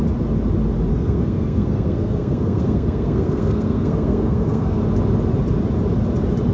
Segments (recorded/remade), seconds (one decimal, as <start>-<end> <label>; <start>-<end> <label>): 0.0-0.9 recorded; 0.9-4.8 remade; 4.8-6.5 recorded

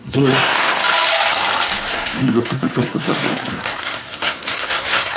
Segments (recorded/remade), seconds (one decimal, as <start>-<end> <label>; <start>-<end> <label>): 0.0-0.8 remade; 0.8-1.9 recorded; 1.9-5.2 remade

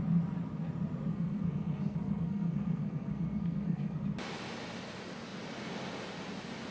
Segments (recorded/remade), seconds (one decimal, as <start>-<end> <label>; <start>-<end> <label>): 0.0-1.1 recorded; 1.1-4.0 remade; 4.0-6.7 recorded